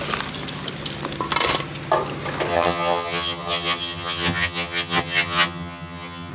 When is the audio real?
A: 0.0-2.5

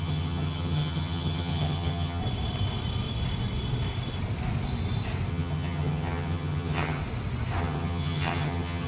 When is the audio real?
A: 2.2-5.3; 7.0-7.6